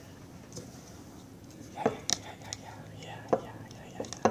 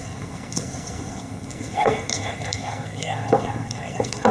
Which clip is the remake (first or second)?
second